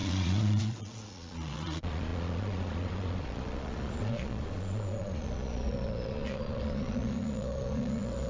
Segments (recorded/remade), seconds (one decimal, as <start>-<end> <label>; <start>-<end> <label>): 0.0-8.3 remade